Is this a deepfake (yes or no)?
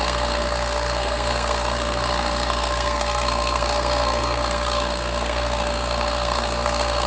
yes